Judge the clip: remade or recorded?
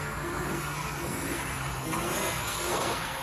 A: remade